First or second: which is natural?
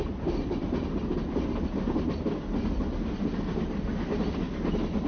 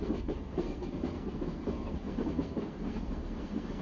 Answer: first